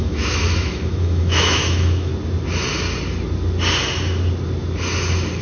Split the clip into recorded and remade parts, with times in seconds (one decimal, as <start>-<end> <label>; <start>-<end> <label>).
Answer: 0.0-2.1 remade; 2.1-5.4 recorded